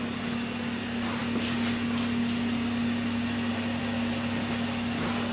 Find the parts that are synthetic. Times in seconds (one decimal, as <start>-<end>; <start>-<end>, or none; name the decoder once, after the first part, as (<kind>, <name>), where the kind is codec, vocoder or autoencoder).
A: none